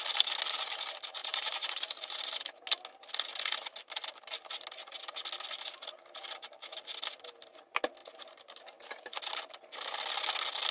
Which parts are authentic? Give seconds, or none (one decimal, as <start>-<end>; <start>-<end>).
0.0-1.2; 2.2-8.0; 9.2-10.7